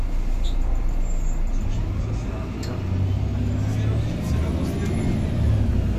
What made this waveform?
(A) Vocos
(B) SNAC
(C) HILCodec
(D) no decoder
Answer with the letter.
D